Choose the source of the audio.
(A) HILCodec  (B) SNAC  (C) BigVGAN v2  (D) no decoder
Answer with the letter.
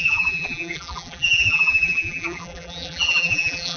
C